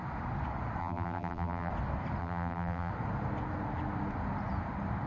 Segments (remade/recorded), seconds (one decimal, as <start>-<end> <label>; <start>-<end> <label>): 0.0-0.8 recorded; 0.8-1.7 remade; 1.7-2.2 recorded; 2.2-2.9 remade; 2.9-5.1 recorded